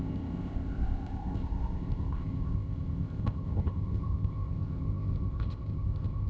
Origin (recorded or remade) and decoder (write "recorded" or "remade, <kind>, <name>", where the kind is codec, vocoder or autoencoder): remade, codec, ZipCodec